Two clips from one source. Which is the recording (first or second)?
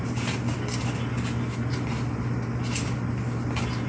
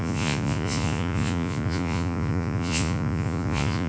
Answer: first